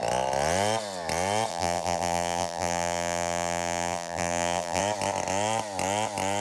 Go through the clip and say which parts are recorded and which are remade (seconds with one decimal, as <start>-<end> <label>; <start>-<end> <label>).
0.0-1.5 recorded; 1.5-4.8 remade; 4.8-6.4 recorded